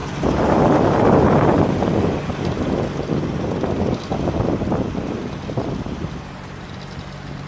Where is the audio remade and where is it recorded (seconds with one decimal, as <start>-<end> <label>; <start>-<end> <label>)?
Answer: 0.0-7.5 recorded